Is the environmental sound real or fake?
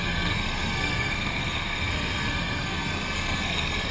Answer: fake